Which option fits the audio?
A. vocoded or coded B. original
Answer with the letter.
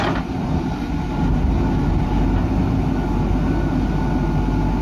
B